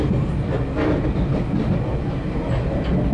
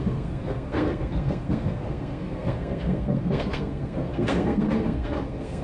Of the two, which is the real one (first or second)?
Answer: first